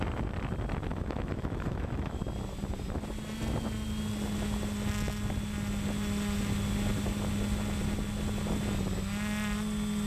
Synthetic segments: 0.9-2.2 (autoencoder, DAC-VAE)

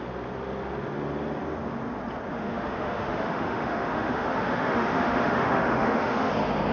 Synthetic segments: 2.3-6.3 (autoencoder, DAC-VAE)

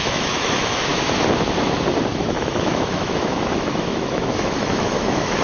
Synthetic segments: 0.0-0.9 (autoencoder, DAC-VAE); 2.1-5.4

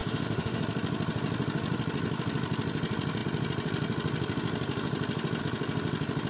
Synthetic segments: 0.0-0.6 (autoencoder, DAC-VAE)

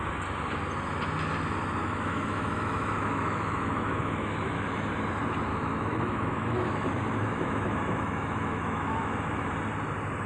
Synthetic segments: 1.8-4.9 (autoencoder, DAC-VAE); 5.5-9.5

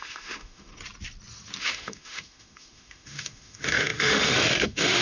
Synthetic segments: 0.0-0.7 (autoencoder, DAC-VAE); 1.6-5.0